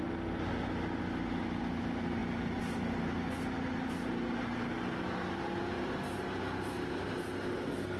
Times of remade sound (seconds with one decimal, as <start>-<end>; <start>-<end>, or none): none